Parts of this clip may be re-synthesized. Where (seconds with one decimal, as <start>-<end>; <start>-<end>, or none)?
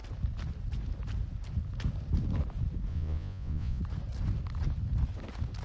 2.9-3.8